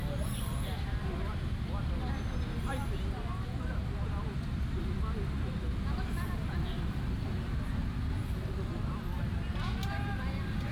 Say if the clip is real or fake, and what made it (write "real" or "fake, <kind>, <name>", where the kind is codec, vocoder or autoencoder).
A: real